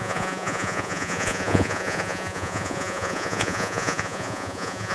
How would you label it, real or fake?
fake